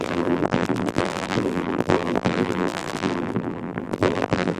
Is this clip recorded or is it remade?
remade